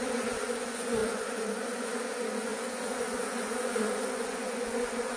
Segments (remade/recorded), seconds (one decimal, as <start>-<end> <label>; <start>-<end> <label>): 0.0-5.2 remade

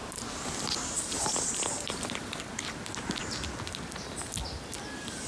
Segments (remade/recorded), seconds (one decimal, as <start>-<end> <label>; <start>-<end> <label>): 0.0-5.3 recorded

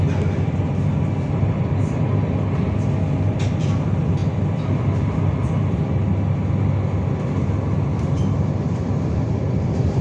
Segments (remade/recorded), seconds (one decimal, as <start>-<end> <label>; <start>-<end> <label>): 0.0-10.0 recorded